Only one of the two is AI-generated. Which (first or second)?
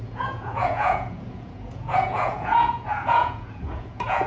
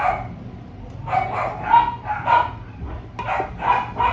first